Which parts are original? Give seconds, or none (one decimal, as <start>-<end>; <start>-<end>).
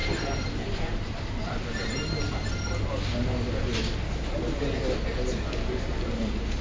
3.1-5.9